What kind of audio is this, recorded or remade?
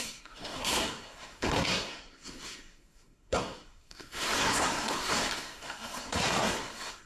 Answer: remade